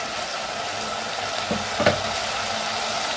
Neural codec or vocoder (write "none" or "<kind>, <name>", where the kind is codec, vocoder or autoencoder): none